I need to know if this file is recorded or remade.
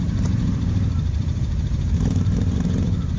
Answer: remade